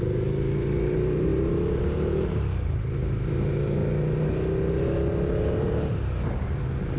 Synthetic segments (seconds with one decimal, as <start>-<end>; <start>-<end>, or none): 0.0-3.8